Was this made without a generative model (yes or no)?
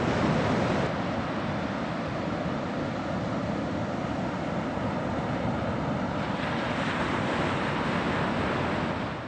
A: yes